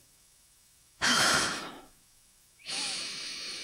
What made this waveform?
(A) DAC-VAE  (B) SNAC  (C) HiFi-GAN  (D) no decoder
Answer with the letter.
A